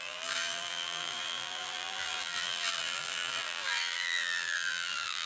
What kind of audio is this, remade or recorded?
remade